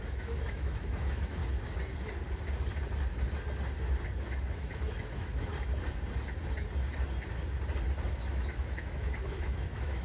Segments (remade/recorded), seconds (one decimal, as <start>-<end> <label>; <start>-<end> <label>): 0.0-1.4 remade; 1.4-4.2 recorded; 4.2-5.5 remade; 5.5-8.1 recorded; 8.1-10.0 remade